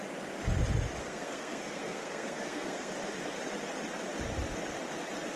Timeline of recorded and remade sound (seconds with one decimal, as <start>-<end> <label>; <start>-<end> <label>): 0.0-1.0 recorded; 1.0-2.9 remade; 2.9-5.4 recorded